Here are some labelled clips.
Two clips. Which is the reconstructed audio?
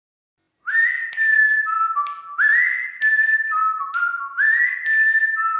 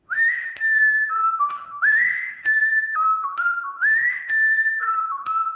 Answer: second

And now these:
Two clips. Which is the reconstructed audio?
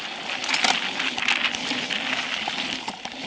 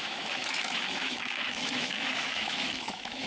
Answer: second